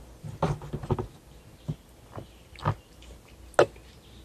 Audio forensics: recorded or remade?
recorded